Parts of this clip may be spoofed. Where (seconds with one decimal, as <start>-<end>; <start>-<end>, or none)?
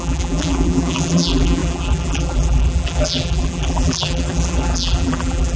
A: 0.0-5.6